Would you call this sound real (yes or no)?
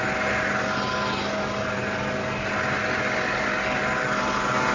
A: yes